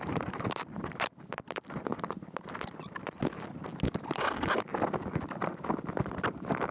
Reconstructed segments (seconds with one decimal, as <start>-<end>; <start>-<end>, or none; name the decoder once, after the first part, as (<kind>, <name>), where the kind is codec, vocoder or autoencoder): 0.0-1.9 (vocoder, BigVGAN v2); 5.9-6.7